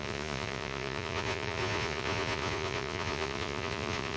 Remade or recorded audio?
remade